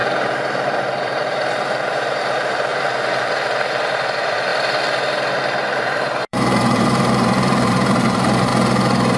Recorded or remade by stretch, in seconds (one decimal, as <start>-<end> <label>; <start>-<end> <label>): 0.0-4.5 remade; 4.5-5.3 recorded; 5.3-8.5 remade; 8.5-9.2 recorded